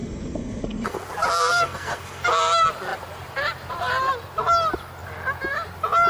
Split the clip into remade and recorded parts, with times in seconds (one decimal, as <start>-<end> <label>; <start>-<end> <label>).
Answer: 0.0-1.0 remade; 1.0-1.5 recorded; 1.5-2.3 remade; 2.3-6.1 recorded